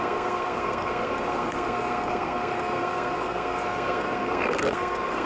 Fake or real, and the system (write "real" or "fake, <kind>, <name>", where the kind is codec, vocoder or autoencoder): fake, codec, SNAC